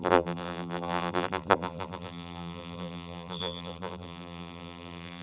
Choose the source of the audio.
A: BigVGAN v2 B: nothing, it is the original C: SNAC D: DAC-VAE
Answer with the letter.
A